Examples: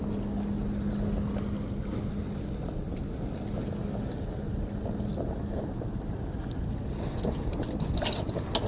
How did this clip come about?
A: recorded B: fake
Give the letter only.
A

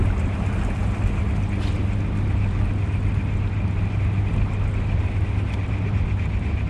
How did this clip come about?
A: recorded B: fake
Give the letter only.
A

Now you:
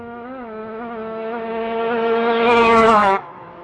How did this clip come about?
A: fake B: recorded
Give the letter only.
A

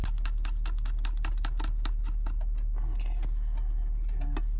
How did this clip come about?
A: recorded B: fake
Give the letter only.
A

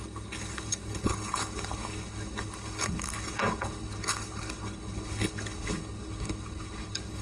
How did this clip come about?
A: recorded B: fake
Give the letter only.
B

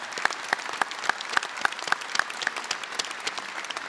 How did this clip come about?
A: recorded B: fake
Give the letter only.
A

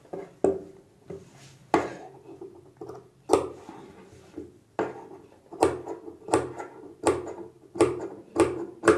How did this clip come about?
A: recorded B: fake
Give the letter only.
A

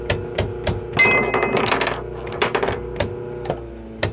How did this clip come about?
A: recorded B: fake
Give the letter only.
A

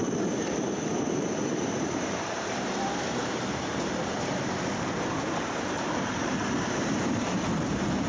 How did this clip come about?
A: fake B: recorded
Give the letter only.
A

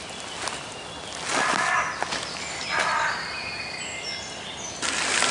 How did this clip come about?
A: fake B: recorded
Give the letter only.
B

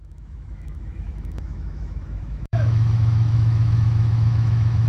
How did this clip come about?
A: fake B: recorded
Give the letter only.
A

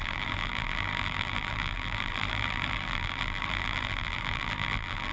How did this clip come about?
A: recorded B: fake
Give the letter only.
B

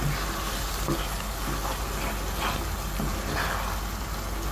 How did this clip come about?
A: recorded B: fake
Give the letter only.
A